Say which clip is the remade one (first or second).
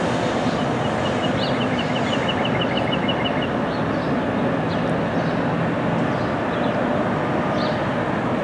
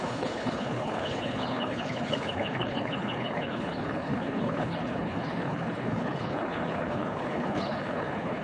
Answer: second